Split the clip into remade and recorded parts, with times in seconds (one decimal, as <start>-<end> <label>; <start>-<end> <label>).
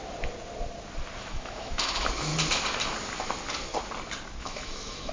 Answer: 0.0-1.2 recorded; 1.2-2.3 remade; 2.3-4.4 recorded; 4.4-5.1 remade